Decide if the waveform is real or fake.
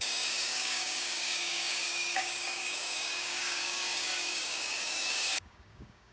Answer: fake